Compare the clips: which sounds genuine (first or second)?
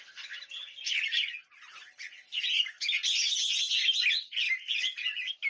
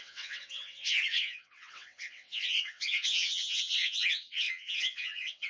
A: first